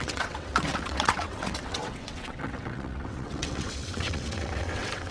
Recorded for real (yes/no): no